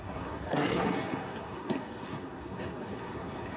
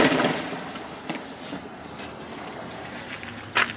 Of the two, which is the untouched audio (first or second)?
second